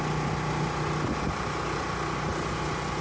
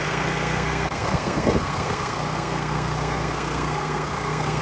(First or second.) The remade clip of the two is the second